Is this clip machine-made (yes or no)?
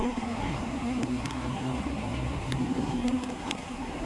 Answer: yes